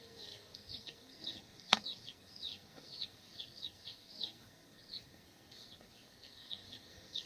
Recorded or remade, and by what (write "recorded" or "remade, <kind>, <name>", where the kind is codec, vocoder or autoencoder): remade, codec, SNAC